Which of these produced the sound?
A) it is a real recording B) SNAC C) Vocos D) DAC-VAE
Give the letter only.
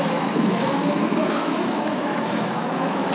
D